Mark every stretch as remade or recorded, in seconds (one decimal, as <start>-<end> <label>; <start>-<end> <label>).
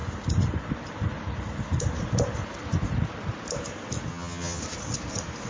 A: 0.0-4.1 recorded; 4.1-4.6 remade; 4.6-5.5 recorded